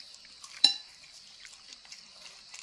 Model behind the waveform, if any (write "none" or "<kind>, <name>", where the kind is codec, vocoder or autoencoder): vocoder, BigVGAN v2